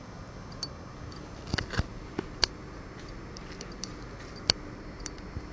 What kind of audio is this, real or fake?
real